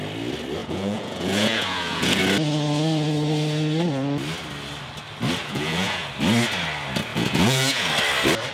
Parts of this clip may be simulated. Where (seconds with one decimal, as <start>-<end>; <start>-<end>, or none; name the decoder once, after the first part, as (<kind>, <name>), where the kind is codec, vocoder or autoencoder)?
0.6-2.2 (vocoder, Vocos); 5.4-6.1; 7.1-7.9